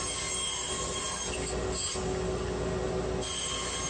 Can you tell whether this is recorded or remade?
recorded